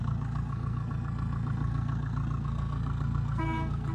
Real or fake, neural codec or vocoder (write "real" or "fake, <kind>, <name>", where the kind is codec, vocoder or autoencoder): fake, codec, SNAC